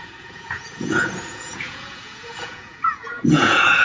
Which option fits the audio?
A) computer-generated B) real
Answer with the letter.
A